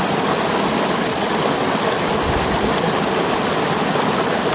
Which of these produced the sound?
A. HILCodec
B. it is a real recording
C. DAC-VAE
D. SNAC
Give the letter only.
B